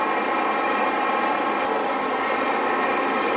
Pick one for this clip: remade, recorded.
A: recorded